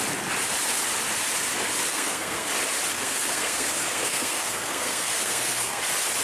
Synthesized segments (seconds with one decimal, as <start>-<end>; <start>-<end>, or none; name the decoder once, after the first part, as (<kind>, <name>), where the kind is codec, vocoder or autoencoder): 1.9-2.5 (codec, SNAC); 2.9-5.8